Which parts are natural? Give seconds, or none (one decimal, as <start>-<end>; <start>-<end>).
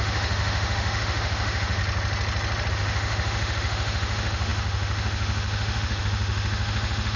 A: 1.8-2.7